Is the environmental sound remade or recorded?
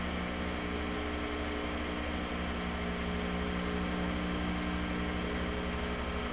recorded